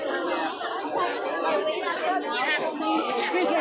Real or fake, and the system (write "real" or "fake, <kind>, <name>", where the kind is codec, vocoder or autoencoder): real